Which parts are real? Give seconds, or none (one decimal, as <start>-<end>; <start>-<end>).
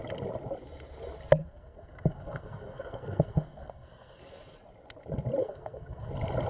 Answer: 0.0-1.4; 4.2-5.4; 6.1-6.5